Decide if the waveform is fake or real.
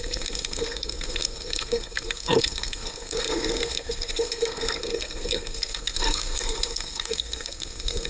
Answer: fake